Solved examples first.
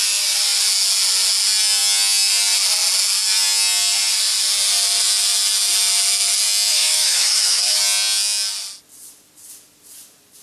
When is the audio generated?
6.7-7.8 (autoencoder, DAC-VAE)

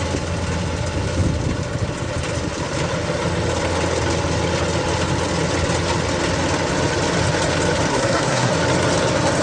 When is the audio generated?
7.9-8.5 (codec, SNAC)

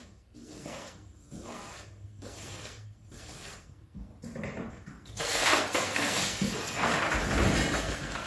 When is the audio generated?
0.0-4.1 (codec, SNAC); 4.7-6.9; 7.8-8.3